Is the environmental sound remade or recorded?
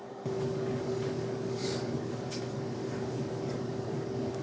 remade